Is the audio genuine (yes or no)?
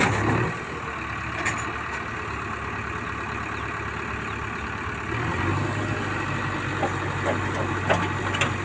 yes